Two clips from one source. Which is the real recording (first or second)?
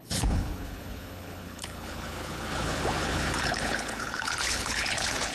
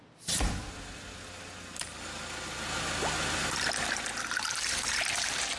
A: second